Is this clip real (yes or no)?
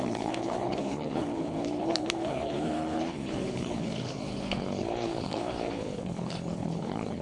no